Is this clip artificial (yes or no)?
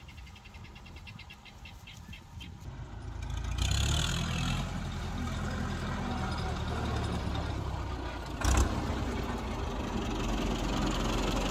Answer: no